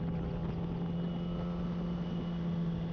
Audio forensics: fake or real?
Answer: real